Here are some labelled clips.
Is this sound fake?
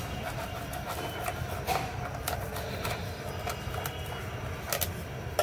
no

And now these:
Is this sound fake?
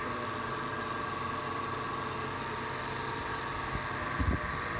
no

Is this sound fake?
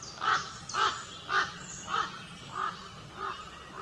no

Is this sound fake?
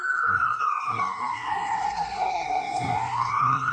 yes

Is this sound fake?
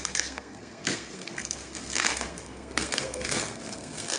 yes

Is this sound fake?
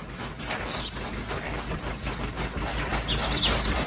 no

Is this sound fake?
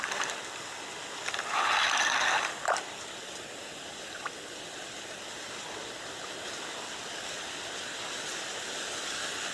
no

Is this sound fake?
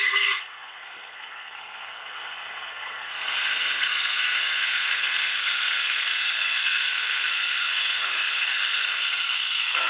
yes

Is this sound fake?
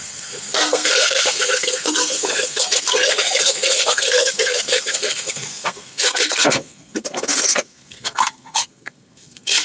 yes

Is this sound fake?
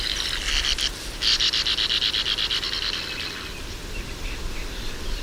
no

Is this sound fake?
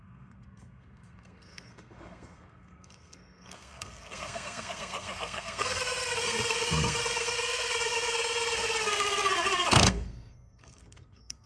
yes